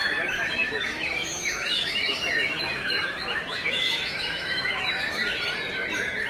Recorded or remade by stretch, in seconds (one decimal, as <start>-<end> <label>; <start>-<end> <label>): 0.0-5.2 remade; 5.2-6.3 recorded